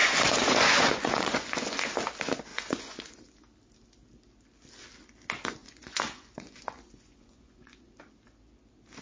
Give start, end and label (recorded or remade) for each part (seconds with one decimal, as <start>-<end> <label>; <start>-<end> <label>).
0.0-1.9 remade; 1.9-2.5 recorded; 2.5-3.3 remade; 3.3-5.6 recorded; 5.6-7.9 remade; 7.9-9.0 recorded